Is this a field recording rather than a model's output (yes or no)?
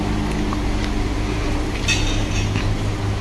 yes